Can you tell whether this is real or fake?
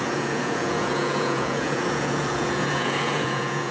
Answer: fake